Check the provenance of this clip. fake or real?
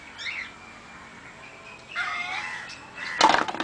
real